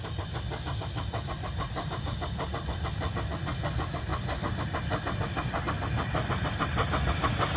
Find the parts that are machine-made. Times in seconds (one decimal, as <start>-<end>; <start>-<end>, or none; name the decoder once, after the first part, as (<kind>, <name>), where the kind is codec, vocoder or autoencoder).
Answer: none